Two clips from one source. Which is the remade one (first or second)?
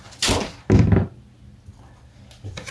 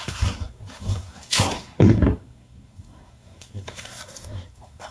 second